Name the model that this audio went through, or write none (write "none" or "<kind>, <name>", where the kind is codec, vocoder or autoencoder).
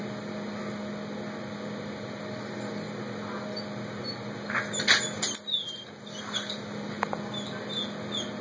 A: none